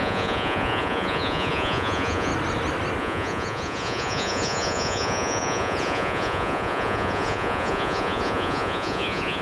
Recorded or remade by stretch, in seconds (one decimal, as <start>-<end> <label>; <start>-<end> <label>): 0.0-2.3 remade; 2.3-3.0 recorded; 3.0-9.4 remade